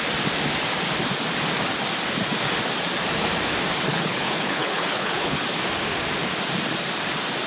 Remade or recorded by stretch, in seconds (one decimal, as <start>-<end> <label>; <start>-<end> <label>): 0.0-3.9 recorded; 3.9-5.4 remade; 5.4-7.5 recorded